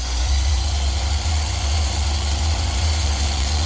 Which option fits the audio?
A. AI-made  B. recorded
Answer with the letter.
A